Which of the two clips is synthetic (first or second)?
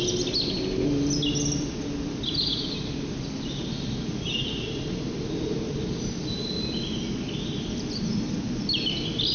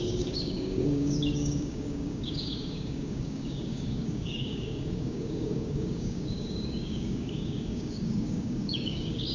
second